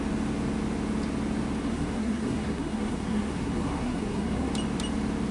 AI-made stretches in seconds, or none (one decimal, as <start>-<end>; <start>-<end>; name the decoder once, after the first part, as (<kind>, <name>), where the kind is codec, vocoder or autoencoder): 1.6-4.5 (codec, SNAC)